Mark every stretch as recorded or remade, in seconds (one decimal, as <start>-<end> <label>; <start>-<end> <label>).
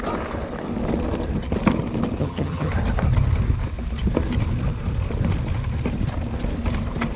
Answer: 0.0-2.2 recorded; 2.2-2.7 remade; 2.7-7.2 recorded